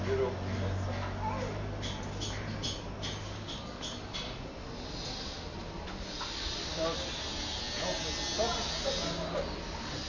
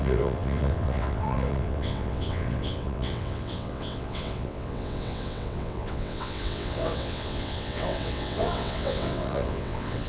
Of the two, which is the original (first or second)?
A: first